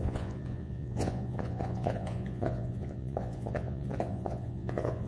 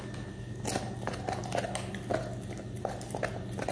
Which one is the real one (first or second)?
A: second